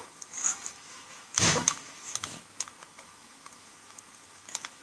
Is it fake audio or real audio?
fake